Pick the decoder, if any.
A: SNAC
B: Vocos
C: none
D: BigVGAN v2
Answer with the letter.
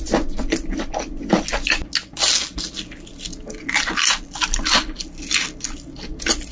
C